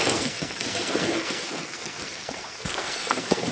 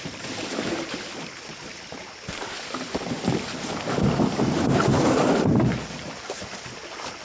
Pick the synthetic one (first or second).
first